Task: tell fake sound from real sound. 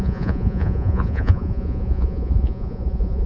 fake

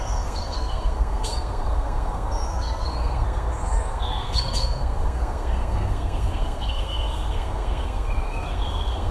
fake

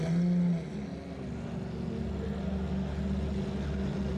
real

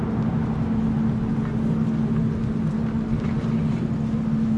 real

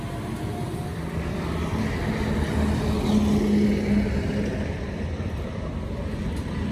real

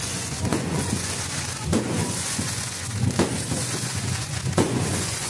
fake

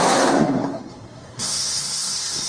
fake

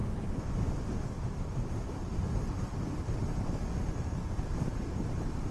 real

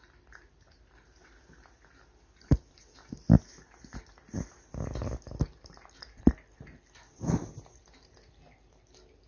real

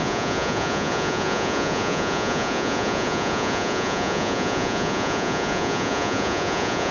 fake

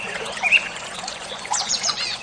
fake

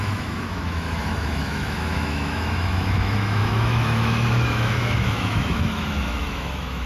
fake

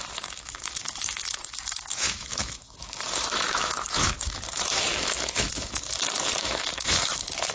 fake